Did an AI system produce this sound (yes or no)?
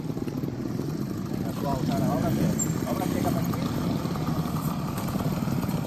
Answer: yes